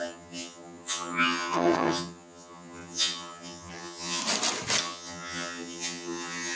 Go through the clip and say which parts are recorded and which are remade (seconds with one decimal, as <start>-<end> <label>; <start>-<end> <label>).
0.0-4.2 remade; 4.2-4.8 recorded; 4.8-6.6 remade

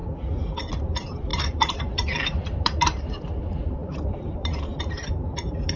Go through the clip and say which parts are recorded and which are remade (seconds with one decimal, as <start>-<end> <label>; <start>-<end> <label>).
0.0-0.7 recorded; 0.7-5.8 remade

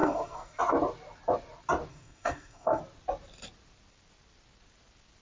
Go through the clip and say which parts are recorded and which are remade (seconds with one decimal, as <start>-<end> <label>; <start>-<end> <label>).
0.0-0.6 remade; 0.6-1.9 recorded; 1.9-2.8 remade; 2.8-5.2 recorded

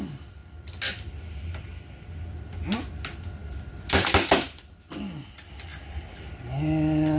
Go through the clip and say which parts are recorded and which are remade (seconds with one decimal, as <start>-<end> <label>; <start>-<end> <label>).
0.0-5.7 recorded; 5.7-6.3 remade; 6.3-7.2 recorded

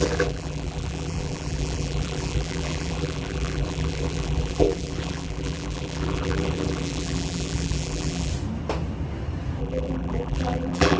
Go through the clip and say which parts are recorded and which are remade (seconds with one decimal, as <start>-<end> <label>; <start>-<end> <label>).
0.0-8.3 remade; 8.3-9.6 recorded; 9.6-11.0 remade

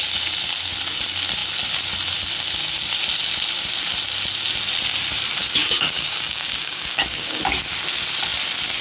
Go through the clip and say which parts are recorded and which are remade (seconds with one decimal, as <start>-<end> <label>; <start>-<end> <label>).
0.0-5.4 recorded; 5.4-7.4 remade; 7.4-8.8 recorded